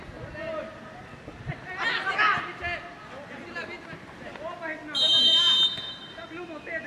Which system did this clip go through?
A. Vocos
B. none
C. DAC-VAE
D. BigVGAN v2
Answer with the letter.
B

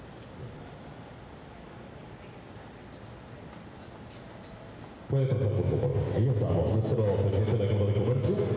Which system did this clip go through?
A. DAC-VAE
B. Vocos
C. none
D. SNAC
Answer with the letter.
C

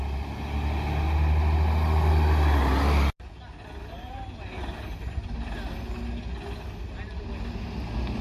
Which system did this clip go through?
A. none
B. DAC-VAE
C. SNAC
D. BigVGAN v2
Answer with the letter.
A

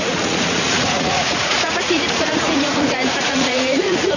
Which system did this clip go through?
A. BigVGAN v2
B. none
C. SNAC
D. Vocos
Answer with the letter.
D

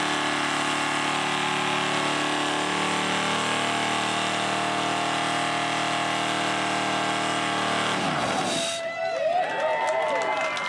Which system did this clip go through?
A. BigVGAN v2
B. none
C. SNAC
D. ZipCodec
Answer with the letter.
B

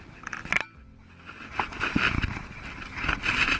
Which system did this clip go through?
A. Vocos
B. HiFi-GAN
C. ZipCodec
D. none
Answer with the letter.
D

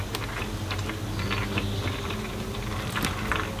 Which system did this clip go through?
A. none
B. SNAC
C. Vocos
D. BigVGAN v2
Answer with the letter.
A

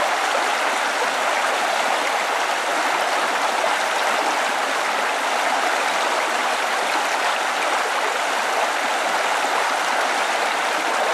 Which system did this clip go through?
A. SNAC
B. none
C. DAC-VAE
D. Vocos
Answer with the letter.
B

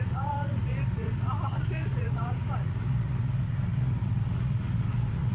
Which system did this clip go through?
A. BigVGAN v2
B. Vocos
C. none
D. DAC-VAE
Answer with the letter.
B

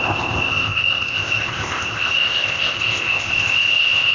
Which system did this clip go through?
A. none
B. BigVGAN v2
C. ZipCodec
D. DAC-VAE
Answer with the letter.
C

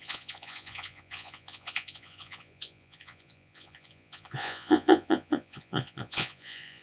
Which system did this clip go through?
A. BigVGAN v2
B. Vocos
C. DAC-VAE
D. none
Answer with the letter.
B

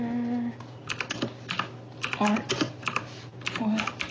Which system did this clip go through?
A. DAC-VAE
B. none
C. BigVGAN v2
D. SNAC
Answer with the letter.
B